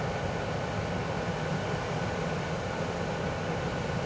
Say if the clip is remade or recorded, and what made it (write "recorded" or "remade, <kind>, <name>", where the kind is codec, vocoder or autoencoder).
recorded